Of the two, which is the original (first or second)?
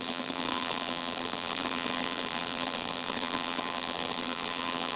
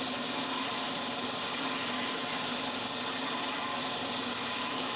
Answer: second